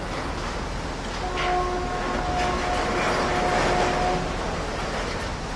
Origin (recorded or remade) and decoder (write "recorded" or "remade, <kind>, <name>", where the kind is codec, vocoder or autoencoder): recorded